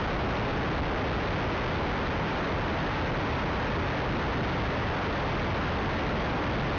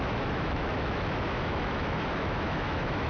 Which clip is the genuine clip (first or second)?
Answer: first